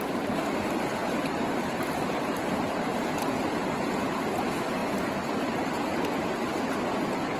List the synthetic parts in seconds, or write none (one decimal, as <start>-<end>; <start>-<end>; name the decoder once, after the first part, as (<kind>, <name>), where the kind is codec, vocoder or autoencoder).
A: 1.0-3.2 (vocoder, BigVGAN v2)